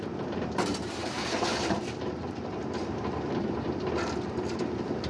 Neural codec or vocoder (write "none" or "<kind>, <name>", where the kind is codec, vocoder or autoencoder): vocoder, BigVGAN v2